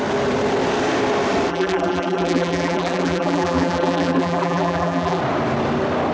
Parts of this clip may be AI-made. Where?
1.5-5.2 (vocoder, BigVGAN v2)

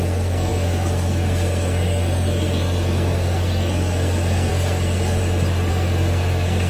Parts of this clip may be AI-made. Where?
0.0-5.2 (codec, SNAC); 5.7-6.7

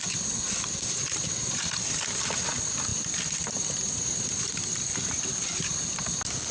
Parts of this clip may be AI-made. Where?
none